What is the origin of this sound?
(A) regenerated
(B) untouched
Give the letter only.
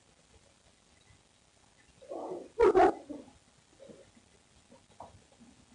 B